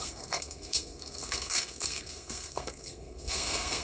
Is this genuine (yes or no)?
no